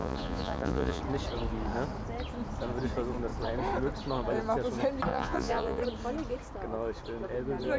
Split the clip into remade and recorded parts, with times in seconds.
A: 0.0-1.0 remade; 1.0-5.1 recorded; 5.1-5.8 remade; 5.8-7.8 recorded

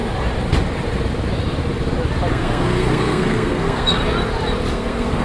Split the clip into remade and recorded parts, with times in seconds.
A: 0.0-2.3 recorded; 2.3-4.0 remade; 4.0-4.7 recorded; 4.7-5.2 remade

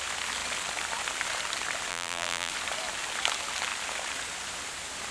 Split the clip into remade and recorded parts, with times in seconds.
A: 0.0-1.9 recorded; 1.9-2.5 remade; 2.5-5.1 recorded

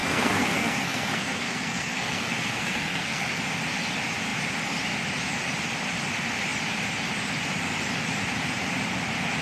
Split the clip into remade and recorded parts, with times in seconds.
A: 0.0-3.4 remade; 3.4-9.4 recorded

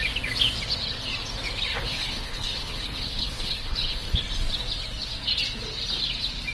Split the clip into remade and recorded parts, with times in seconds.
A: 0.0-1.7 recorded; 1.7-4.2 remade; 4.2-6.5 recorded

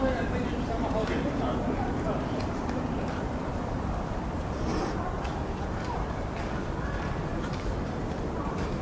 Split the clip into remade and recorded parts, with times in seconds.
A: 0.0-8.8 remade

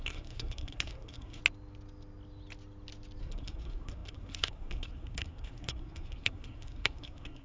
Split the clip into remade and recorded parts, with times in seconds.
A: 0.0-1.4 remade; 1.4-3.2 recorded; 3.2-7.4 remade

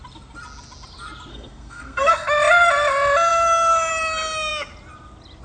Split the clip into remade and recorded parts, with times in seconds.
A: 0.0-1.3 recorded; 1.3-2.1 remade; 2.1-5.4 recorded